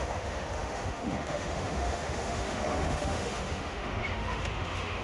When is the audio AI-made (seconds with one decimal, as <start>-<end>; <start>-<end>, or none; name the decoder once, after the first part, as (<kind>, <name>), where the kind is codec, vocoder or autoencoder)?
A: 0.0-5.0 (autoencoder, DAC-VAE)

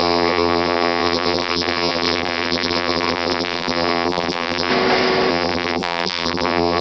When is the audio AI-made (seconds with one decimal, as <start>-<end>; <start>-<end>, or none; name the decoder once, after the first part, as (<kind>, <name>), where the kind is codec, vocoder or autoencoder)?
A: 0.0-4.7 (vocoder, BigVGAN v2); 5.3-6.8

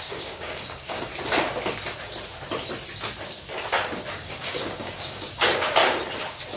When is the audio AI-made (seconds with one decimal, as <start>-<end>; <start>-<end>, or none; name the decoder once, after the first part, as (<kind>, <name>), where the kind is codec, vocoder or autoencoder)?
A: 0.0-1.1 (codec, DAC); 4.1-5.8

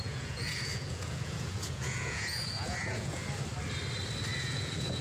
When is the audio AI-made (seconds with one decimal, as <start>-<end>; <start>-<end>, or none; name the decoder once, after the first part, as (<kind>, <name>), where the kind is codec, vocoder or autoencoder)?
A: 0.0-3.2 (vocoder, Vocos); 4.4-5.0

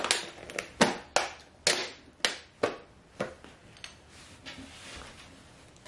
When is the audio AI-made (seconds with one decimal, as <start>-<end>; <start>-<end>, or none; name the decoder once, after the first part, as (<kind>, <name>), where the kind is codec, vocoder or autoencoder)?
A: none

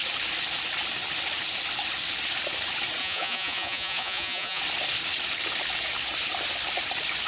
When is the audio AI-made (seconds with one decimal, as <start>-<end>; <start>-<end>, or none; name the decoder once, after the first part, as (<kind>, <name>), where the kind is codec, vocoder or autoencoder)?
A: 3.0-4.6 (vocoder, Vocos)

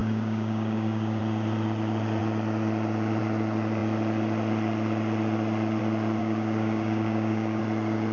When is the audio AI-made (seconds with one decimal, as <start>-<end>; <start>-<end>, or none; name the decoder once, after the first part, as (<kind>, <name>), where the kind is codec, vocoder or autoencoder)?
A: 0.0-1.2 (codec, DAC); 6.2-7.6